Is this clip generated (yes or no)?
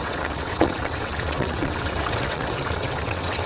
yes